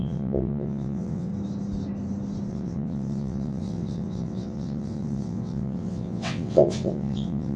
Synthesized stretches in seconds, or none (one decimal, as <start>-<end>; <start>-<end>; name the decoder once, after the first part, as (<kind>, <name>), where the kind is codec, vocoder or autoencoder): 0.0-1.3 (vocoder, WaveNeXt); 2.5-7.6